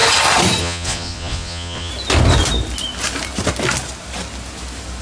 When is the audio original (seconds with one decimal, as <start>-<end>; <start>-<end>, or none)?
0.0-0.6; 1.9-5.0